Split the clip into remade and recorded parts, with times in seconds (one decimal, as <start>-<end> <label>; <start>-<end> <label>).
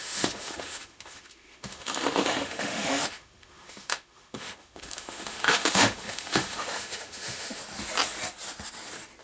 0.0-7.6 remade; 7.6-9.2 recorded